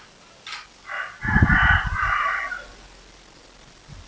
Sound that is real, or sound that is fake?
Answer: real